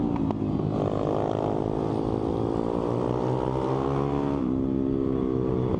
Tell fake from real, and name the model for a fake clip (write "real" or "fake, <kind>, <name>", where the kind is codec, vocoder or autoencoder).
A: real